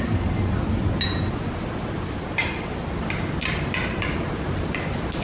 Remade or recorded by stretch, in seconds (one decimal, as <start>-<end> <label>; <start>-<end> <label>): 0.0-5.2 recorded